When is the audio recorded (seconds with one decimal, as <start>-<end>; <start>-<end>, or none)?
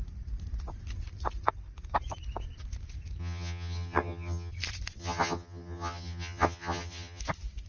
0.0-3.2; 4.5-5.0; 7.2-7.7